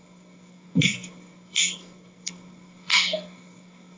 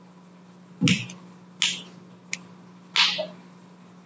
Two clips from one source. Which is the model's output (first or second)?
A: first